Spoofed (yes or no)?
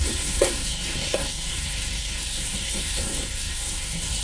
yes